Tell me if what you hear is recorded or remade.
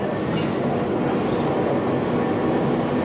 recorded